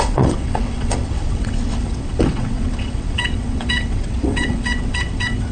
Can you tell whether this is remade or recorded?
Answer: remade